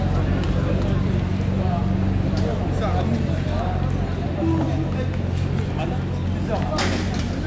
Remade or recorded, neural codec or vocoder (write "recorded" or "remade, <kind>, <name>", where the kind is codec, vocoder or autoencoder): recorded